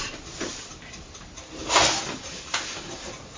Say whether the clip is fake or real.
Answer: real